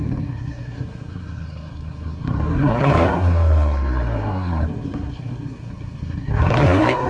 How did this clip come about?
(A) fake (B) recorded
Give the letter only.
A